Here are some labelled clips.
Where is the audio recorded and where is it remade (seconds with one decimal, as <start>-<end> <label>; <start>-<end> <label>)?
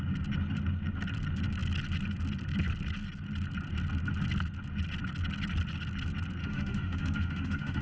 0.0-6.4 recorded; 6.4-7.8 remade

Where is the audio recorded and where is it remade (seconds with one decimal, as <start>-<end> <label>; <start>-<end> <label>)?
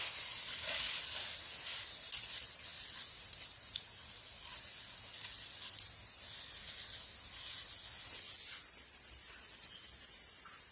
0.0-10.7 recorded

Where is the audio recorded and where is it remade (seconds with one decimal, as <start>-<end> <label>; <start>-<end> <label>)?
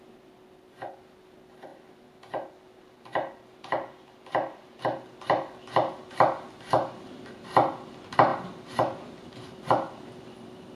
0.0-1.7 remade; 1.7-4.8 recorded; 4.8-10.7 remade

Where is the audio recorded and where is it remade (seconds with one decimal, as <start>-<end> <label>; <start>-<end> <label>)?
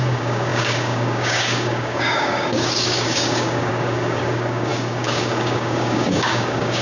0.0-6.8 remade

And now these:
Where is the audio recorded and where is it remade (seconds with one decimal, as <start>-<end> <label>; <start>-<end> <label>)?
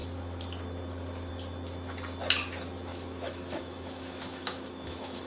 0.0-2.9 recorded; 2.9-5.3 remade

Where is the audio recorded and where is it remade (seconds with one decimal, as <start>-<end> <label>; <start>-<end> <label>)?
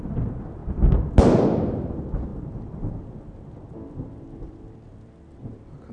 0.0-2.3 recorded; 2.3-5.9 remade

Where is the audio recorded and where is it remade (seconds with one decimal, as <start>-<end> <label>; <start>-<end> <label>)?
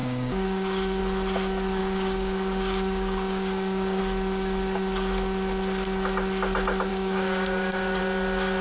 0.0-1.0 remade; 1.0-1.8 recorded; 1.8-4.0 remade; 4.0-6.9 recorded; 6.9-8.0 remade; 8.0-8.6 recorded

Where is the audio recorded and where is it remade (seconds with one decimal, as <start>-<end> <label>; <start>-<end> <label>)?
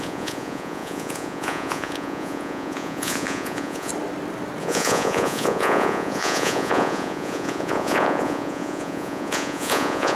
0.0-3.9 remade; 3.9-4.6 recorded; 4.6-10.2 remade